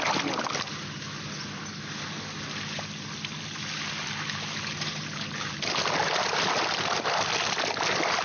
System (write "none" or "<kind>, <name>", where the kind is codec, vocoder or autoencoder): none